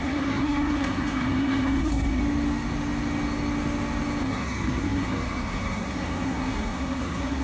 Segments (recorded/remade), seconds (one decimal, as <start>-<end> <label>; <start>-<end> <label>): 0.0-2.2 remade; 2.2-4.2 recorded; 4.2-7.4 remade